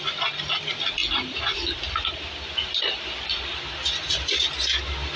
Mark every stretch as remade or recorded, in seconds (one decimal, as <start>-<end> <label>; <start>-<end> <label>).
0.0-5.2 recorded